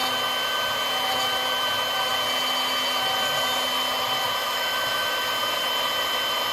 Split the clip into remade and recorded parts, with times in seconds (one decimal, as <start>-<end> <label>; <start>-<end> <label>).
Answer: 0.0-4.4 recorded; 4.4-5.1 remade; 5.1-6.5 recorded